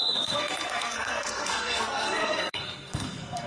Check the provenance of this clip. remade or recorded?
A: remade